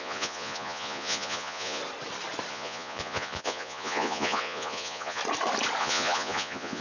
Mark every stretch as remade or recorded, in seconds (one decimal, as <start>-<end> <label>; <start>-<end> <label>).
0.0-1.8 remade; 1.8-2.5 recorded; 2.5-5.2 remade; 5.2-5.8 recorded; 5.8-6.8 remade